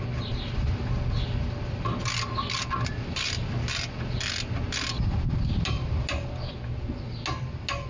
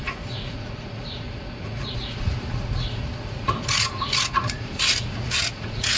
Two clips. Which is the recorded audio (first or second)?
first